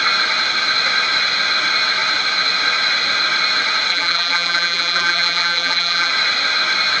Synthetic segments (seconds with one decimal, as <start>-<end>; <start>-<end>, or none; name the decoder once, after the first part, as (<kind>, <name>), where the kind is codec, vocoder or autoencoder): 3.9-6.1 (vocoder, BigVGAN v2)